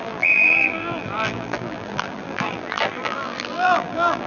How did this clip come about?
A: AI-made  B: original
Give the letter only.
A